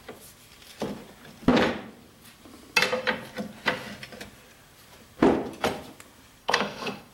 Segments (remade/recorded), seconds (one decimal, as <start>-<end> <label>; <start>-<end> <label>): 0.0-6.4 recorded; 6.4-7.1 remade